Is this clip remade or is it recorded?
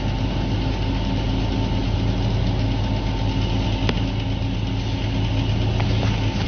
recorded